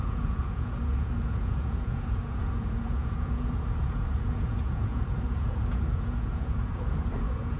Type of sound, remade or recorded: remade